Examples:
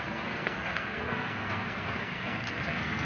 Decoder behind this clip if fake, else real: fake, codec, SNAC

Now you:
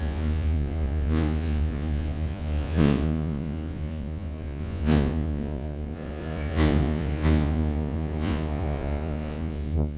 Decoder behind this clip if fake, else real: fake, vocoder, Vocos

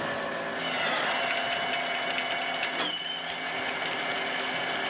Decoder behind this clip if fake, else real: real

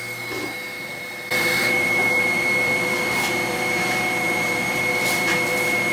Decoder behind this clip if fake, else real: fake, vocoder, BigVGAN v2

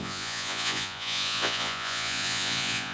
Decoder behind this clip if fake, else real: fake, vocoder, Vocos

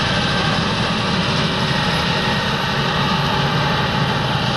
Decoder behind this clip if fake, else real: real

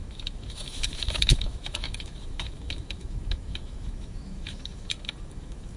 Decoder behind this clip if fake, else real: fake, autoencoder, DAC-VAE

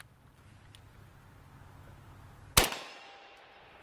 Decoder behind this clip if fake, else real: real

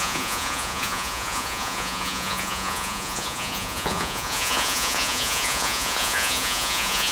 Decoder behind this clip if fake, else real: fake, vocoder, Vocos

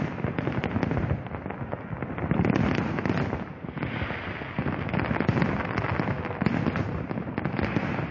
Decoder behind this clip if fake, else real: real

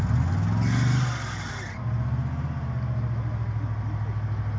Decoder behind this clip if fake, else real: real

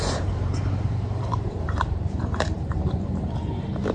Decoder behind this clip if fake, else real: fake, vocoder, BigVGAN v2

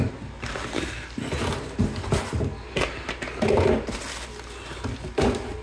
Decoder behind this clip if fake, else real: real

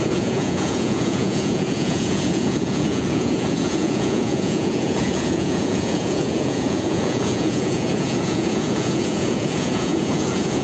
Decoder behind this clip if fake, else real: fake, vocoder, Vocos